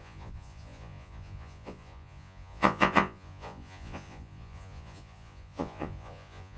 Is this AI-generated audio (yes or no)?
yes